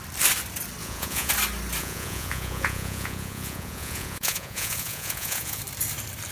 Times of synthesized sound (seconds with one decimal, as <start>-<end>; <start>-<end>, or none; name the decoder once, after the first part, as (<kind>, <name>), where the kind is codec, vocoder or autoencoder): 0.8-1.3 (vocoder, Vocos); 1.8-5.6